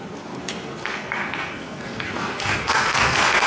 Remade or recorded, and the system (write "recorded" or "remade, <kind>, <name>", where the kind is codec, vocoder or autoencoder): remade, codec, SNAC